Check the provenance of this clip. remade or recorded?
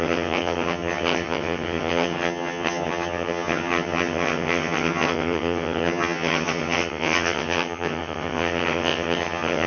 remade